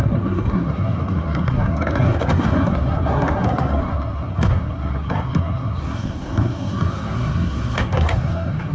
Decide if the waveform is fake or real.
fake